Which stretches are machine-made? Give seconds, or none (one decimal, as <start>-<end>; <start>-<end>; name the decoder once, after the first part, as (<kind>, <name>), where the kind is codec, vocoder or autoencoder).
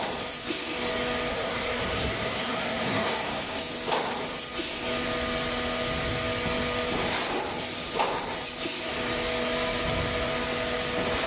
1.3-3.6 (codec, SNAC)